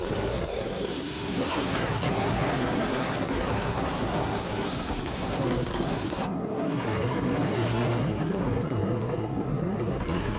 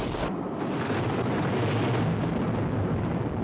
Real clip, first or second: second